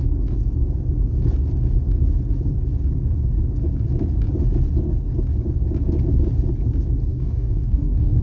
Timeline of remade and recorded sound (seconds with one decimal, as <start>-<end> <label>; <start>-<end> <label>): 0.0-7.1 recorded; 7.1-8.2 remade